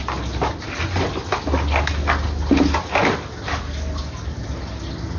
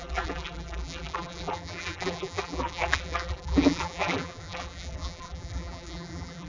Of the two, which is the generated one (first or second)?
second